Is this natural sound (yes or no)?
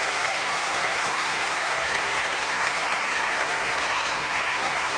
no